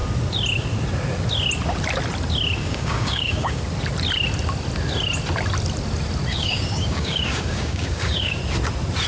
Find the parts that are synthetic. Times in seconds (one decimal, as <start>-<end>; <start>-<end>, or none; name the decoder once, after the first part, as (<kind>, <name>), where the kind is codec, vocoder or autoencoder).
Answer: 2.6-3.6 (codec, DAC); 6.3-8.4